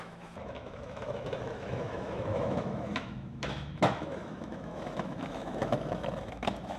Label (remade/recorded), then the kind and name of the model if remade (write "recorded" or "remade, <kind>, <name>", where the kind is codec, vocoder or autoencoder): remade, autoencoder, DAC-VAE